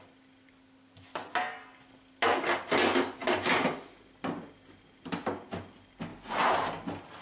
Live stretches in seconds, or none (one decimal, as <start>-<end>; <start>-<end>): 0.0-7.2